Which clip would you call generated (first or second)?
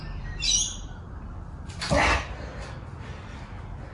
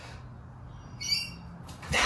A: first